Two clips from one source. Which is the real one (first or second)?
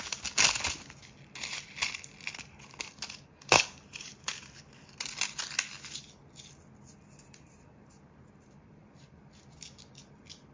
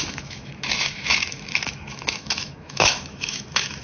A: first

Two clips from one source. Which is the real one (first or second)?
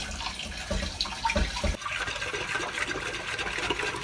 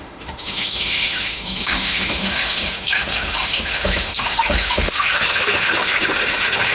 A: first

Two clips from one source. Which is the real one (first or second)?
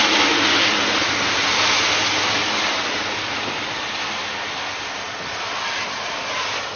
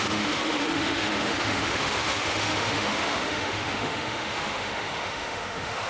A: first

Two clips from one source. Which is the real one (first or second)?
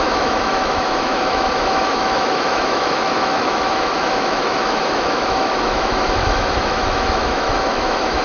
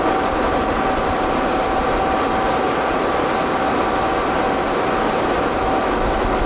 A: second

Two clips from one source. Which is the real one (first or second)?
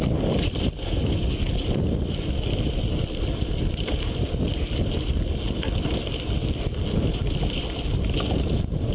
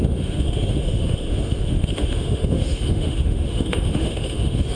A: first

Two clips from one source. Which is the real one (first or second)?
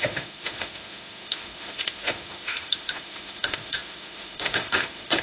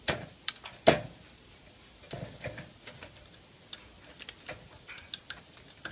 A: second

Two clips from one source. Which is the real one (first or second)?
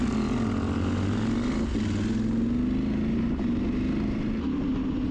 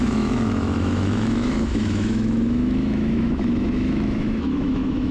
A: first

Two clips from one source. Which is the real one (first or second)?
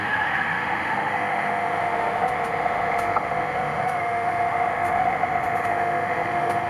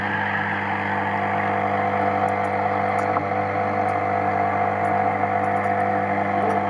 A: second